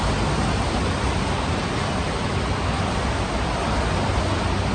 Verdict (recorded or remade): recorded